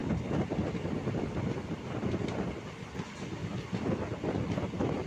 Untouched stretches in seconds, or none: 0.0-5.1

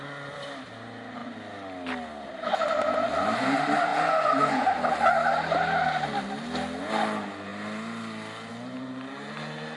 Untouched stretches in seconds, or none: 0.0-3.9; 4.6-9.8

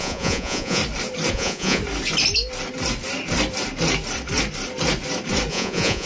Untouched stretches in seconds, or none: 0.8-1.3; 1.8-5.5

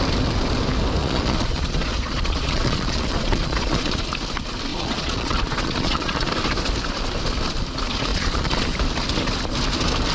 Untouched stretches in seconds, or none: 0.0-1.0; 4.0-4.7; 6.3-8.1; 8.6-10.1

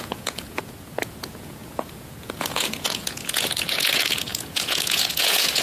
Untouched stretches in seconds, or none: none

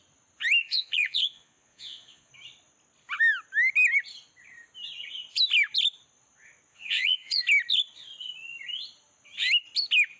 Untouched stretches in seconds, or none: 0.0-0.6; 2.3-6.7; 7.4-10.2